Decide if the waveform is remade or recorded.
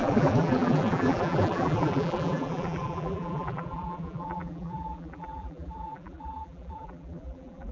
remade